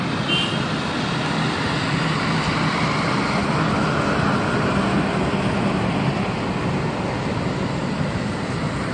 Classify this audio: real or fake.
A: real